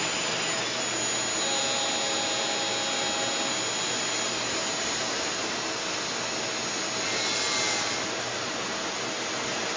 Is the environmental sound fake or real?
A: real